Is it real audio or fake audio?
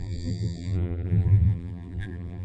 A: fake